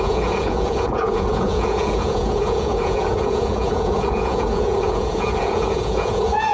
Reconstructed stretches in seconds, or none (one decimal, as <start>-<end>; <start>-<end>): 0.0-6.5